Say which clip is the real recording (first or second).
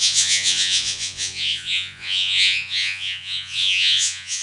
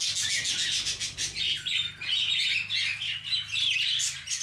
second